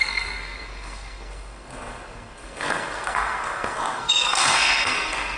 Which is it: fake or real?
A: fake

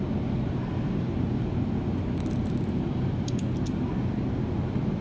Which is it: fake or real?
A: real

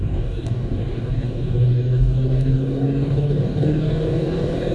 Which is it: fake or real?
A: fake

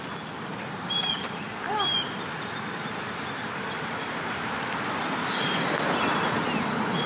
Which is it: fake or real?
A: real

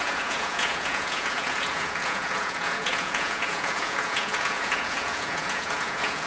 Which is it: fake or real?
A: fake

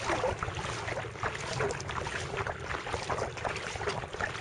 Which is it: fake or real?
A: real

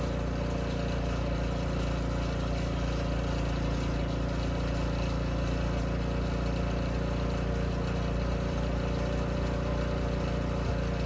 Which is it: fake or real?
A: real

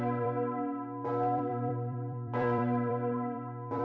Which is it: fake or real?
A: fake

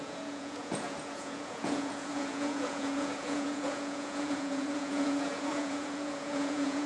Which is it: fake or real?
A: fake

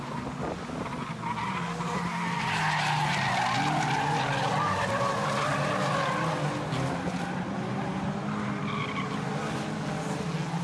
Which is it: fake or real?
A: real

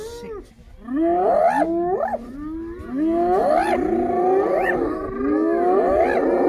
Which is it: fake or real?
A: real